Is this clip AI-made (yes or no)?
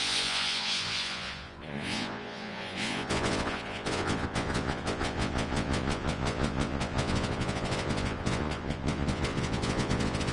yes